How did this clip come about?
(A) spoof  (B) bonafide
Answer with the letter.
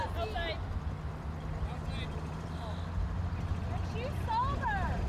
B